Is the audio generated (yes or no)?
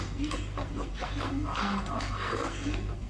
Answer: yes